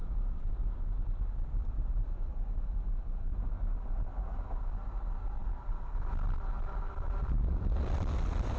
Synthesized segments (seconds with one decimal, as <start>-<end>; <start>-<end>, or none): 0.5-2.3; 6.8-8.6